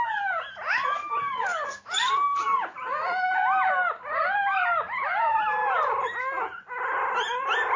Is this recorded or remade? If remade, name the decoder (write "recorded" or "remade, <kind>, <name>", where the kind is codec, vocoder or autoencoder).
recorded